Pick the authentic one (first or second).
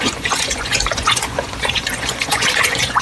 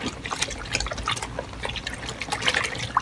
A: second